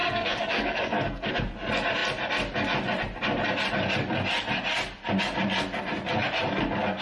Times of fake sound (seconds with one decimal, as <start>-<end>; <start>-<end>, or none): 0.0-1.3